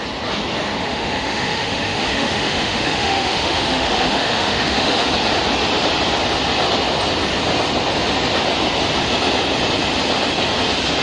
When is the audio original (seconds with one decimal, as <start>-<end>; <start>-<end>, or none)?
0.0-0.8; 5.1-11.0